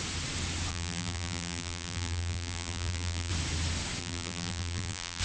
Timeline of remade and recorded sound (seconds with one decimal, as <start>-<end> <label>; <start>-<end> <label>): 0.0-0.7 recorded; 0.7-3.3 remade; 3.3-4.0 recorded; 4.0-5.2 remade